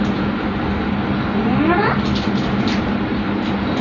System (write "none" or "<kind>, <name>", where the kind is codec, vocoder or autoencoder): none